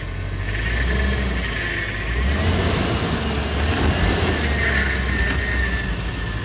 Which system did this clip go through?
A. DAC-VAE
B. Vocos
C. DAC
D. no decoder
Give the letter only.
D